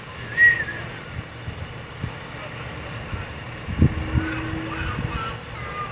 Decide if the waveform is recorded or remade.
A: recorded